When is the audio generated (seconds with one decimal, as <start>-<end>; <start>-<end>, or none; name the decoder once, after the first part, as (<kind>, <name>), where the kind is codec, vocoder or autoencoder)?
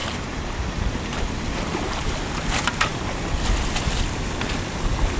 0.0-2.1 (vocoder, BigVGAN v2)